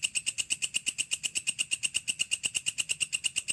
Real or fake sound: real